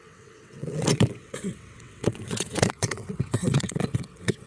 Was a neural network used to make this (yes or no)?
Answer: yes